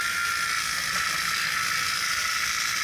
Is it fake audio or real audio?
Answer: real